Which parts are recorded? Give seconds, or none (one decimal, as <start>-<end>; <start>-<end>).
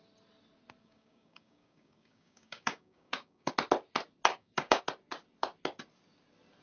0.0-0.8; 3.5-4.3; 4.8-6.6